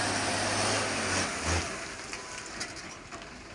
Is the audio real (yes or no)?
yes